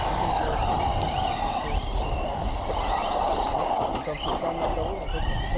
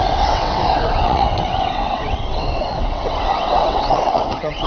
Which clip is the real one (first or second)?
first